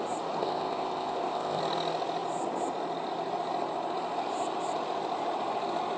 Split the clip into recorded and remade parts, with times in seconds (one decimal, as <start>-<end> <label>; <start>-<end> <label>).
0.0-0.4 recorded; 0.4-1.6 remade; 1.6-6.0 recorded